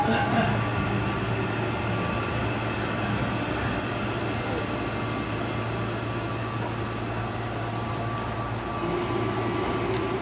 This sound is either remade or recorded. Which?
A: recorded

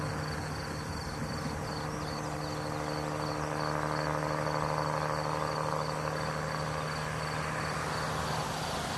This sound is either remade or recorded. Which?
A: recorded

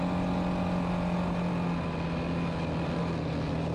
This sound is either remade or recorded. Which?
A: recorded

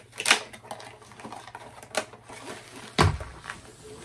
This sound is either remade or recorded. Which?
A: recorded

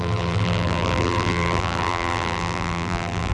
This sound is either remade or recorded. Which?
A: remade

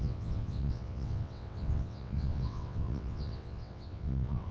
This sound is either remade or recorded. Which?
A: remade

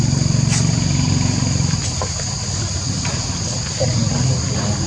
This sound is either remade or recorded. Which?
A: recorded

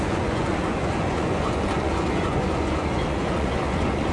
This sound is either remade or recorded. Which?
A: remade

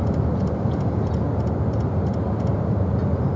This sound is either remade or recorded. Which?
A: recorded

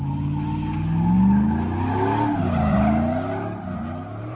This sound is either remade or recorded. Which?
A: recorded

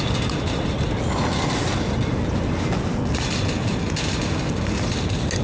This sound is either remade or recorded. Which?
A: recorded